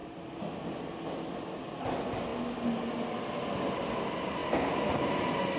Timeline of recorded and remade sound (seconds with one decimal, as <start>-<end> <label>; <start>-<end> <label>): 0.0-5.6 recorded